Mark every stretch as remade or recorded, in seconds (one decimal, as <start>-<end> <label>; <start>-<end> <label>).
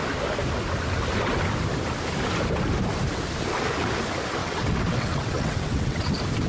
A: 0.0-4.4 recorded; 4.4-6.1 remade; 6.1-6.5 recorded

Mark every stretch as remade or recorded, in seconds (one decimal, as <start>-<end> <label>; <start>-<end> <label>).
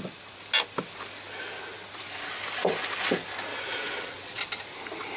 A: 0.0-3.5 recorded; 3.5-4.4 remade; 4.4-5.2 recorded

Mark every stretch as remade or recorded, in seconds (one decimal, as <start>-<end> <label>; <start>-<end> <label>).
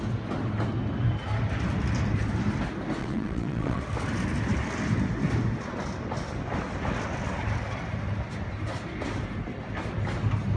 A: 0.0-3.0 recorded; 3.0-3.8 remade; 3.8-10.6 recorded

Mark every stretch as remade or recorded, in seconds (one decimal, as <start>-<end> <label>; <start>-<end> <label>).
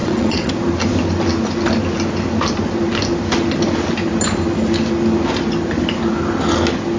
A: 0.0-0.5 remade; 0.5-7.0 recorded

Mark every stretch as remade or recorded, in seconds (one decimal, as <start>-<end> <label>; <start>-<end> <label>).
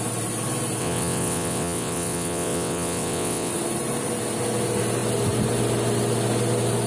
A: 0.0-0.8 recorded; 0.8-3.5 remade; 3.5-6.9 recorded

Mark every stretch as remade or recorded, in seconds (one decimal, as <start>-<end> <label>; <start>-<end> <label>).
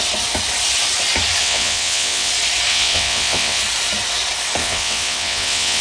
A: 0.0-1.4 recorded; 1.4-2.3 remade; 2.3-2.7 recorded; 2.7-3.6 remade; 3.6-4.6 recorded; 4.6-5.8 remade